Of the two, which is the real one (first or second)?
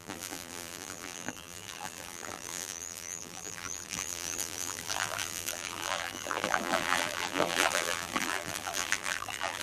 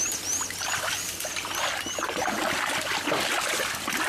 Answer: second